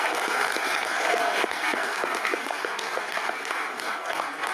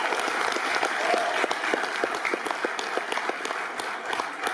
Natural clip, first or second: second